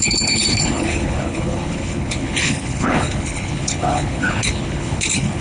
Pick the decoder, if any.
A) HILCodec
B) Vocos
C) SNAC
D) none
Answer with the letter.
A